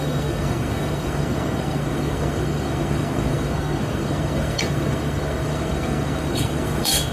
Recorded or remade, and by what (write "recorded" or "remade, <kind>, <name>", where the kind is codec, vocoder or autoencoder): remade, codec, SNAC